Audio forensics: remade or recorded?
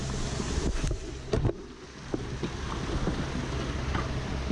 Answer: recorded